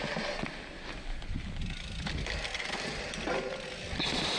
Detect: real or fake real